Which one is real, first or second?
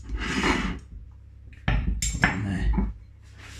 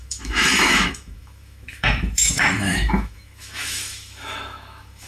first